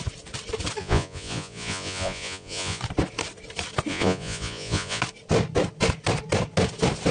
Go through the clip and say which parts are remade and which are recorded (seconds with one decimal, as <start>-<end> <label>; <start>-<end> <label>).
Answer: 0.0-0.8 recorded; 0.8-2.8 remade; 2.8-3.9 recorded; 3.9-5.0 remade; 5.0-7.1 recorded